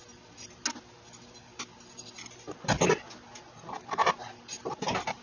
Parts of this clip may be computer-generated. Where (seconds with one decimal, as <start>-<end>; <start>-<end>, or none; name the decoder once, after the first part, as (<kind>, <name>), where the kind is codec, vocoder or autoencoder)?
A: none